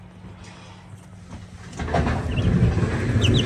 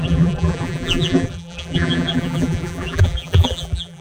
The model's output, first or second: second